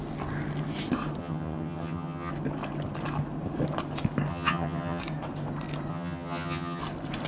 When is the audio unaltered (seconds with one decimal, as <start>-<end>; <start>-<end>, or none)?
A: 0.0-1.2; 2.3-4.3; 5.0-5.9; 6.8-7.3